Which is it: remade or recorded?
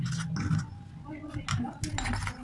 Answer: recorded